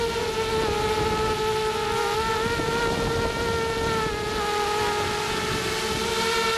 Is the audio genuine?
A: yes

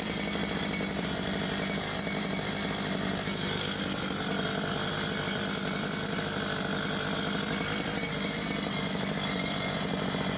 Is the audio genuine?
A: no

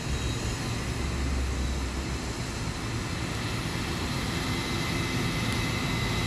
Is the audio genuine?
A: yes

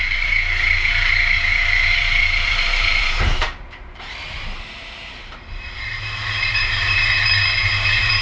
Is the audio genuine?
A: no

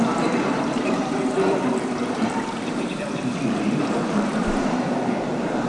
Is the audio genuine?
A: no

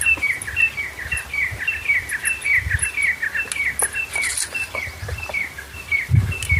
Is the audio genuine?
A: yes